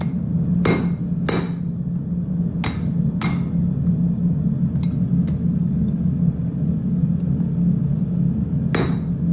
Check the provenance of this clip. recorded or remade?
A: recorded